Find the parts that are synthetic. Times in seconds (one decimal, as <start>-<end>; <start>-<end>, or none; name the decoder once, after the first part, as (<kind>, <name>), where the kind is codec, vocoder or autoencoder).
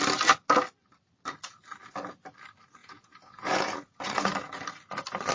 2.8-4.3 (vocoder, Vocos)